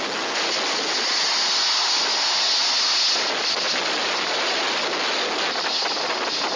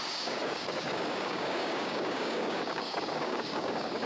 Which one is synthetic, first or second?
second